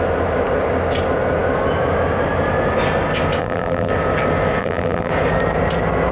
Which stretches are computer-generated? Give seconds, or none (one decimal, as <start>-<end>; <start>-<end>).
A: 3.4-3.9; 4.6-5.1